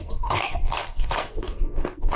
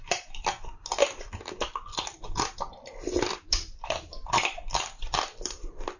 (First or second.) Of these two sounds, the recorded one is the second